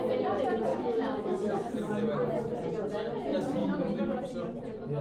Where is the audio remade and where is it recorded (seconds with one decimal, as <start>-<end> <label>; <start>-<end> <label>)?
0.0-0.7 recorded; 0.7-1.7 remade; 1.7-3.6 recorded; 3.6-4.2 remade; 4.2-5.0 recorded